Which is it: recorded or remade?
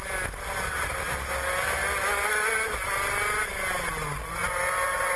recorded